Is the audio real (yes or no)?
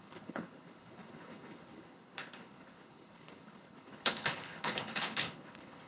no